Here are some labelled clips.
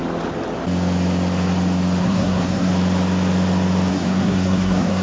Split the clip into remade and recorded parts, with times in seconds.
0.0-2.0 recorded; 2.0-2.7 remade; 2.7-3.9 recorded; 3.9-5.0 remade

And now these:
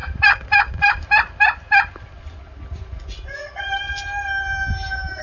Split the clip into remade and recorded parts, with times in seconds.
0.0-2.4 remade; 2.4-3.4 recorded; 3.4-3.9 remade; 3.9-5.2 recorded

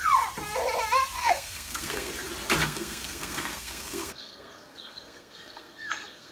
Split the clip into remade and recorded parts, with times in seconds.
0.0-1.2 recorded; 1.2-2.1 remade; 2.1-2.6 recorded; 2.6-6.3 remade

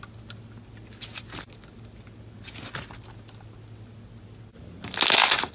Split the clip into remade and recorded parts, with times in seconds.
0.0-5.5 recorded

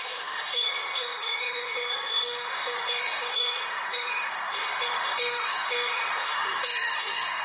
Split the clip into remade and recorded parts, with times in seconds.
0.0-7.4 remade

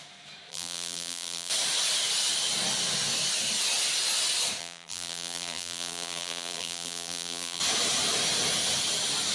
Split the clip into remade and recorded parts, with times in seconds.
0.0-0.5 recorded; 0.5-1.5 remade; 1.5-4.6 recorded; 4.6-7.6 remade; 7.6-9.3 recorded